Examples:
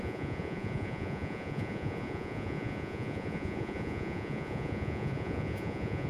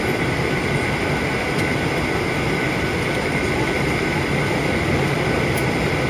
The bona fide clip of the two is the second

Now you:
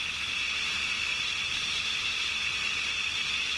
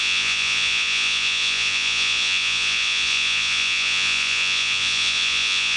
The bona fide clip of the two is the first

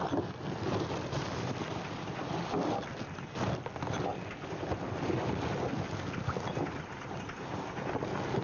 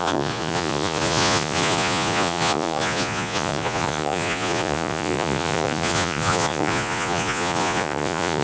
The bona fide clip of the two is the first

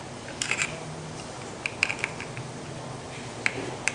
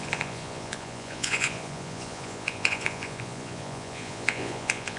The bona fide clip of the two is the first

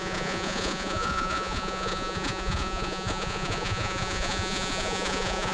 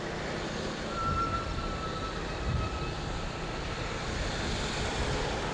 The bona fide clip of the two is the second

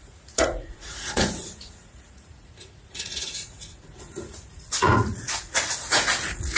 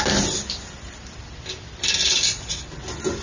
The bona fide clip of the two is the second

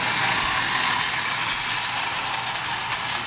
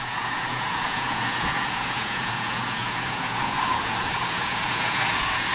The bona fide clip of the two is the first